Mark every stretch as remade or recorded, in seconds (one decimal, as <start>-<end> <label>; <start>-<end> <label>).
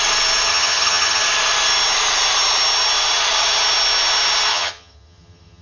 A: 0.0-0.5 recorded; 0.5-1.2 remade; 1.2-4.5 recorded; 4.5-5.6 remade